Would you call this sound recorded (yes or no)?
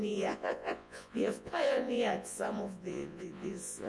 no